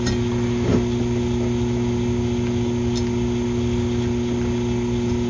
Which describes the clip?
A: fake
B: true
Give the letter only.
B